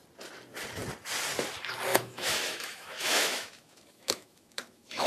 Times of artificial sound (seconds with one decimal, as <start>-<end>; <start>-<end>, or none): 1.9-5.1